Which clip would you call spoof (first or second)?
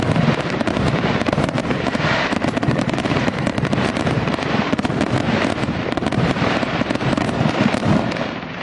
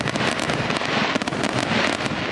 first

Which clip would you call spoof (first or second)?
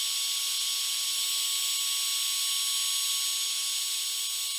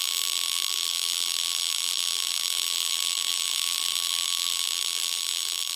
second